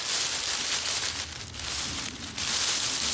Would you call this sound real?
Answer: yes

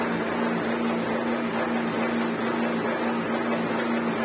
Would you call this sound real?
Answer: yes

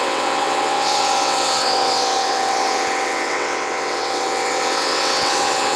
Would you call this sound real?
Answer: no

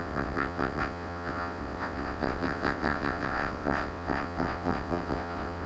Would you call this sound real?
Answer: no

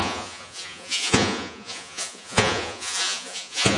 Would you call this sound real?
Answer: no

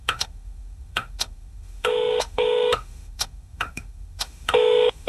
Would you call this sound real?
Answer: no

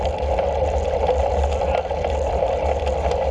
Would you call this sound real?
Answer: yes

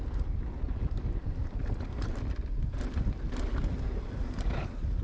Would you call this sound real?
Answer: yes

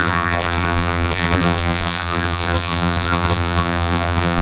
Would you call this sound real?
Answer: no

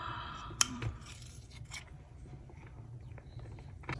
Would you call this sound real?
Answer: no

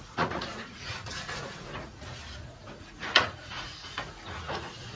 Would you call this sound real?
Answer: no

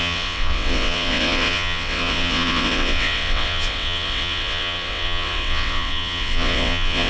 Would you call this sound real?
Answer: no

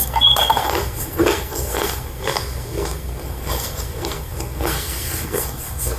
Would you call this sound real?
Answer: no